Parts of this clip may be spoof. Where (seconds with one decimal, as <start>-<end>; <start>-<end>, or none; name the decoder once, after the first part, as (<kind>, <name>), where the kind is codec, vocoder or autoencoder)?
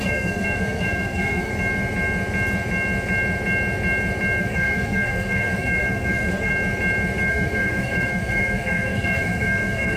0.0-1.5 (codec, SNAC); 4.4-6.5; 7.3-10.0